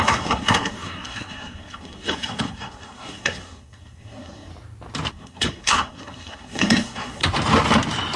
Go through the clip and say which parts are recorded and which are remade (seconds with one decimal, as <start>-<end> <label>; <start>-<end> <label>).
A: 0.0-4.5 remade; 4.5-5.1 recorded; 5.1-7.2 remade; 7.2-8.2 recorded